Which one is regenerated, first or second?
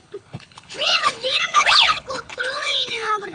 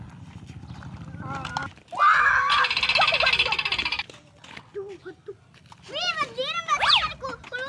first